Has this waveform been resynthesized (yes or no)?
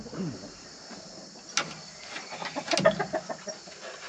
no